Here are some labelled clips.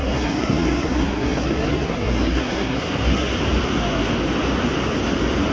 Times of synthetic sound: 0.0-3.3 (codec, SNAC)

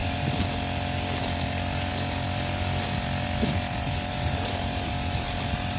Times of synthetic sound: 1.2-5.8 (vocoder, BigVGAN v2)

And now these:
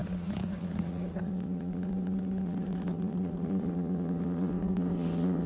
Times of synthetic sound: 0.0-5.5 (vocoder, Vocos)

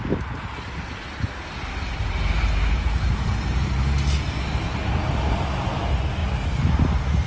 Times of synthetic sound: none

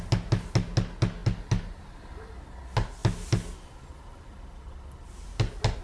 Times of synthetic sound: none